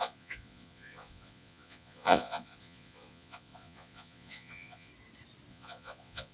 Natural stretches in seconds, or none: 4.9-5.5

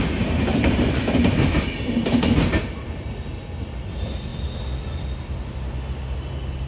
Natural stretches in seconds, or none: 0.0-6.7

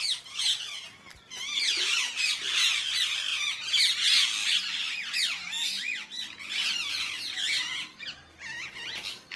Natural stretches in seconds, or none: 0.0-9.4

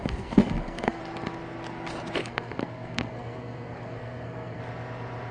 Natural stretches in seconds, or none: 1.0-2.2; 4.6-5.3

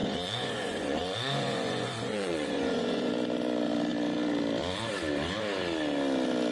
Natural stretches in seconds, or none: 3.1-6.5